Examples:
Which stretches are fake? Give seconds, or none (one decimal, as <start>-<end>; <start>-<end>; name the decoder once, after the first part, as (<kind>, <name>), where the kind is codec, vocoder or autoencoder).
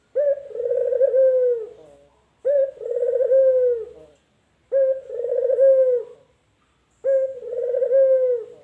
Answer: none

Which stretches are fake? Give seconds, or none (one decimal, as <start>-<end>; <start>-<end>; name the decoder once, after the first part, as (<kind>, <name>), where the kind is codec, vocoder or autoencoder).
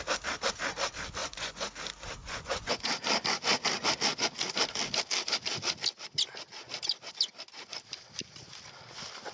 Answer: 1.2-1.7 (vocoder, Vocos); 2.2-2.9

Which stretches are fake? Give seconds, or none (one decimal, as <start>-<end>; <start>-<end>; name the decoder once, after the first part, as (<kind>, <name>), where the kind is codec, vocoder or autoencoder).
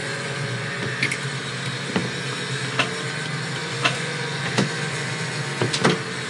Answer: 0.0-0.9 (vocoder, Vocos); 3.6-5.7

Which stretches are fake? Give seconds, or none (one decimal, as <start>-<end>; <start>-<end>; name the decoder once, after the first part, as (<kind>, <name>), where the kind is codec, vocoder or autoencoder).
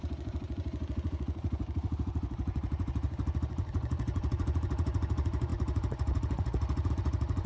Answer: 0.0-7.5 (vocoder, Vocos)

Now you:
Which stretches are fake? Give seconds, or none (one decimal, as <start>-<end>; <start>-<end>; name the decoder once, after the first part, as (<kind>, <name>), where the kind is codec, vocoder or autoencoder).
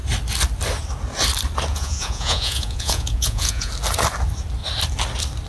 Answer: 1.7-3.7 (vocoder, Vocos)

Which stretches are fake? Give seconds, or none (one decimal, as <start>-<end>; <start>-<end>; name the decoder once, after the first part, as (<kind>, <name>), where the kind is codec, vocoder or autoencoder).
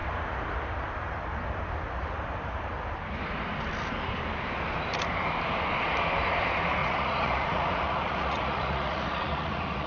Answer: 6.8-9.9 (vocoder, Vocos)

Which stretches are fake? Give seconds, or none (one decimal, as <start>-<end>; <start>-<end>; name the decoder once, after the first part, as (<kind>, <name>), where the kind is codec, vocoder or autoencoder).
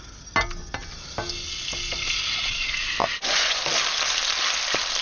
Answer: 3.0-3.6 (vocoder, Vocos)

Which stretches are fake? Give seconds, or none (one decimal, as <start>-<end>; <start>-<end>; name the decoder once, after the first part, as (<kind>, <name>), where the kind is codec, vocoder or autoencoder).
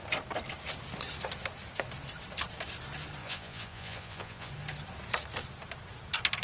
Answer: 3.2-4.5 (vocoder, Vocos)